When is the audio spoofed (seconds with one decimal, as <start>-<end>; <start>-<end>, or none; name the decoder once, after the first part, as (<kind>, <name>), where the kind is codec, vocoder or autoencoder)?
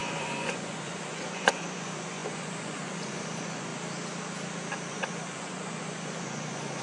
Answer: 0.0-3.7 (vocoder, Vocos); 4.9-6.8